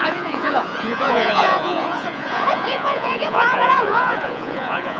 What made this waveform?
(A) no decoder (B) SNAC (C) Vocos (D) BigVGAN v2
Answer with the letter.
C